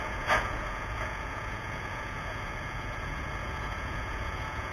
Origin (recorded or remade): remade